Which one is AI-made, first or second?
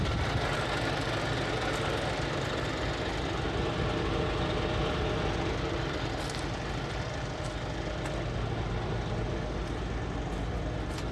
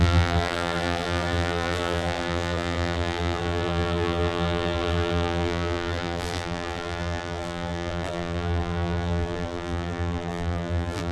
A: second